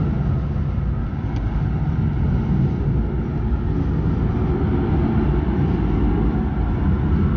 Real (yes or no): yes